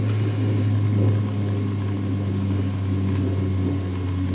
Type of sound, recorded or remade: recorded